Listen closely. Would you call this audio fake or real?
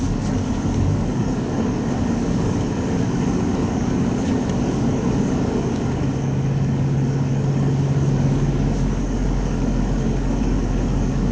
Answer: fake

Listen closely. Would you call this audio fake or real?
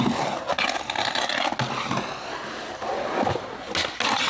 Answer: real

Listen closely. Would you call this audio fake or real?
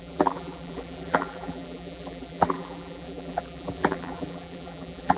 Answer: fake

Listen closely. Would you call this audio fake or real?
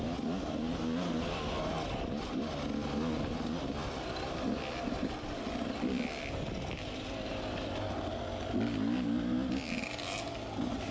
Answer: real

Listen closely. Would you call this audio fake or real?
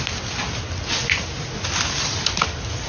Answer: real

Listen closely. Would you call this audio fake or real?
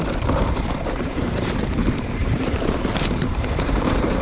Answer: fake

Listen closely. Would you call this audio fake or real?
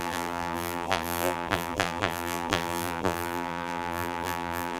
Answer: fake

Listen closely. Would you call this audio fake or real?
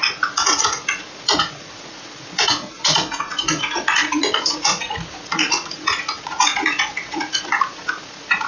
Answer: fake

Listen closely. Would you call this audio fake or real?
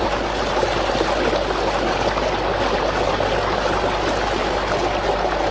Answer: real